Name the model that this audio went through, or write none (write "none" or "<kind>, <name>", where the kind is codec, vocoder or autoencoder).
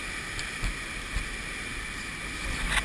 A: none